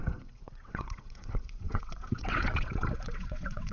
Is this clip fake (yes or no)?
yes